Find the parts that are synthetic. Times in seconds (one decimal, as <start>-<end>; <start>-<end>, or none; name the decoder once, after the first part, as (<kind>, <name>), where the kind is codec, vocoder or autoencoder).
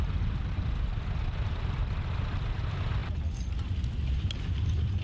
none